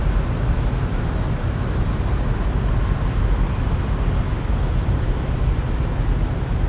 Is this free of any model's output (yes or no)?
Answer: yes